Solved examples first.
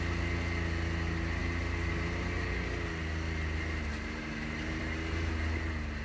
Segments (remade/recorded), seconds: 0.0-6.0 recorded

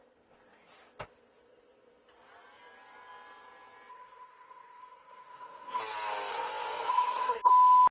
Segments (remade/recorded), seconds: 0.0-3.9 recorded; 3.9-5.8 remade; 5.8-6.9 recorded; 6.9-7.5 remade; 7.5-7.9 recorded

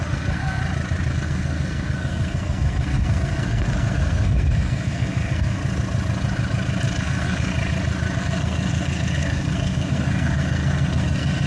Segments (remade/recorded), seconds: 0.0-0.6 remade; 0.6-1.1 recorded; 1.1-5.6 remade; 5.6-7.0 recorded; 7.0-7.5 remade; 7.5-8.2 recorded; 8.2-11.5 remade